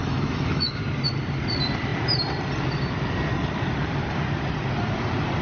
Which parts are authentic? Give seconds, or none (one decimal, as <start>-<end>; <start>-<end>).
0.8-5.4